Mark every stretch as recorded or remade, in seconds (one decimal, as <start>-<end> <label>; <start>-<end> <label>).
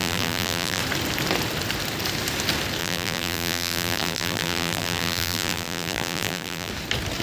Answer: 0.0-0.8 remade; 0.8-2.8 recorded; 2.8-6.7 remade; 6.7-7.2 recorded